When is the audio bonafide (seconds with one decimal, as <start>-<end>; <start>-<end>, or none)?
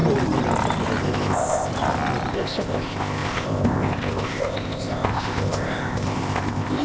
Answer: 0.0-1.0; 1.7-2.3